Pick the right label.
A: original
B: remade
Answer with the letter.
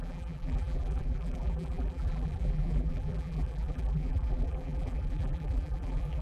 B